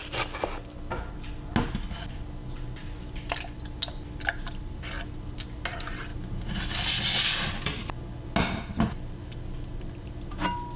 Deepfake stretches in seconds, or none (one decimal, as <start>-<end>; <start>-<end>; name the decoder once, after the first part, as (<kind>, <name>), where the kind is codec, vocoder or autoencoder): none